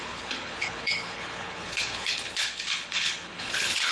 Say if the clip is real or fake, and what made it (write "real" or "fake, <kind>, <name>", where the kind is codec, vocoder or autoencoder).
fake, codec, HILCodec